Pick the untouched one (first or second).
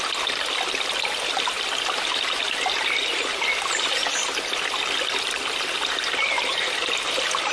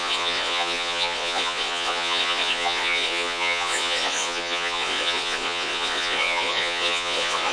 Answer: first